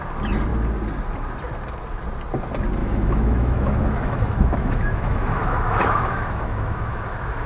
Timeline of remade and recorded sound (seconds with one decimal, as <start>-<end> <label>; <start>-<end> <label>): 0.0-2.8 recorded; 2.8-7.5 remade